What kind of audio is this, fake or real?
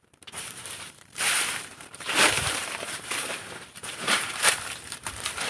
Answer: fake